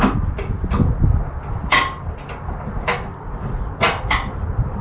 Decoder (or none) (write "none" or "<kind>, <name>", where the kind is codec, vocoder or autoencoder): none